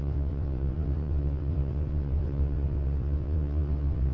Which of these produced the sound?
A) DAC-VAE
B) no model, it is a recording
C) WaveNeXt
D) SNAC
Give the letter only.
C